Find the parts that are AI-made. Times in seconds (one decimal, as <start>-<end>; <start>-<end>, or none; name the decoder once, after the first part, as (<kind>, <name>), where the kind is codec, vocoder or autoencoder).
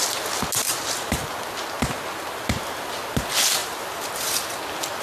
3.6-4.6 (vocoder, BigVGAN v2)